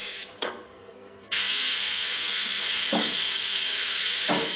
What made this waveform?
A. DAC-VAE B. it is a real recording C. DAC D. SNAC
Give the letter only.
D